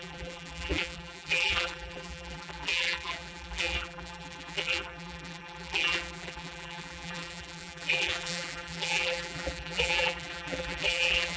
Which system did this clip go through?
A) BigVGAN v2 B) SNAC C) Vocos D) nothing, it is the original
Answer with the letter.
A